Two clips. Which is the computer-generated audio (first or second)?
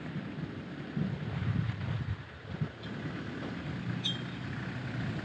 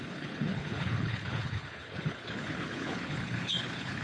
second